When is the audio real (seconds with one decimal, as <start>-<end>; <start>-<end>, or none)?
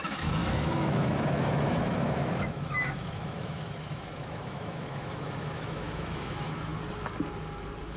6.7-8.0